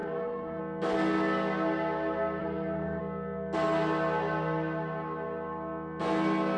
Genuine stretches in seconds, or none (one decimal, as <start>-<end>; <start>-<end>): 0.6-2.4; 3.0-6.6